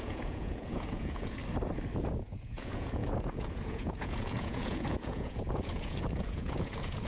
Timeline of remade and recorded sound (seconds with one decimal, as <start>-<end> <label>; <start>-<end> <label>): 0.0-1.4 remade; 1.4-2.2 recorded; 2.2-7.1 remade